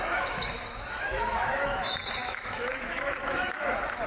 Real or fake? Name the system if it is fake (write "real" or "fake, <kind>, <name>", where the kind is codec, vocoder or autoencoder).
fake, autoencoder, DAC-VAE